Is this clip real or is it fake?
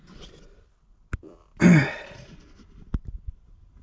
real